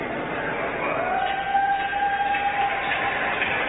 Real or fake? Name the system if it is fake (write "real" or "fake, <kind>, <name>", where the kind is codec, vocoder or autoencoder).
real